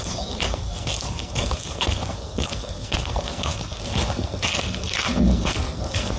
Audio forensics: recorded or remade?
remade